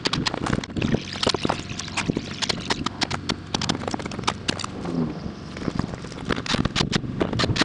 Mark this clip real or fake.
real